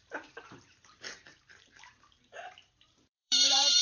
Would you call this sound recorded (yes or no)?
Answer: no